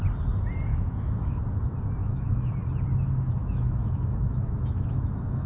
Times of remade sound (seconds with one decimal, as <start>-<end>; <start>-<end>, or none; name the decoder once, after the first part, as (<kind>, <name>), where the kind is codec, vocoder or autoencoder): 0.7-1.4 (autoencoder, DAC-VAE); 2.0-2.5; 3.4-5.5